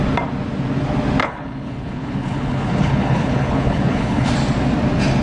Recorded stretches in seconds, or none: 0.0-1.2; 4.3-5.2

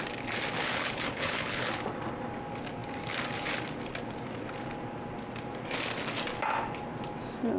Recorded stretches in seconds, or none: 0.0-0.7; 1.7-7.6

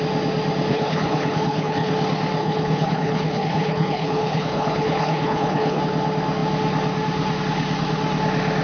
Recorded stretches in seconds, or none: 0.0-0.7; 1.9-2.4; 5.8-8.6

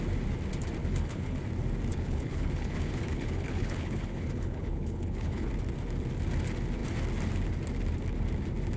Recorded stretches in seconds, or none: 0.0-0.8; 1.4-1.9; 5.5-8.8